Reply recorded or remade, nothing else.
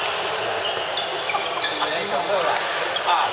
recorded